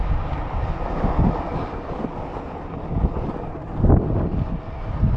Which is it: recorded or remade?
recorded